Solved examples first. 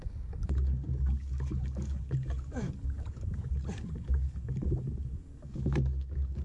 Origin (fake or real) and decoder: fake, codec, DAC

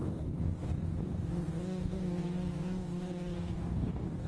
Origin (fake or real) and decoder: fake, codec, DAC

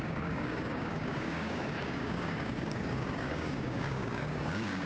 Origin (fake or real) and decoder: fake, codec, DAC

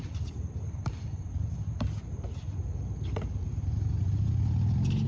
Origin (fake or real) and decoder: real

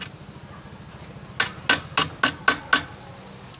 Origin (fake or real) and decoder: real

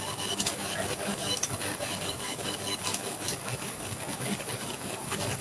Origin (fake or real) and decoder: fake, codec, DAC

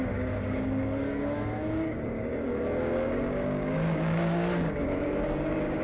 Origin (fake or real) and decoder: fake, codec, DAC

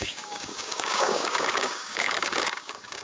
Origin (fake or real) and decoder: fake, codec, DAC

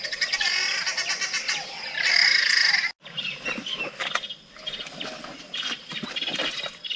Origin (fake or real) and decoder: real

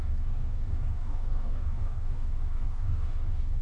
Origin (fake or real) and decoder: fake, codec, DAC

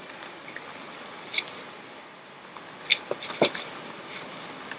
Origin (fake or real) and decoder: real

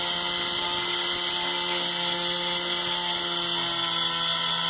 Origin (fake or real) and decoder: real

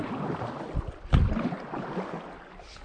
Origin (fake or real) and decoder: real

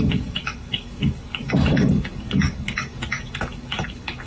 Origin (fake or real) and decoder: fake, codec, DAC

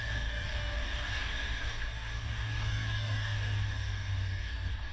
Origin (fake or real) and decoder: fake, codec, DAC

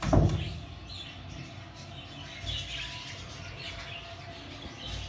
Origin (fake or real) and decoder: real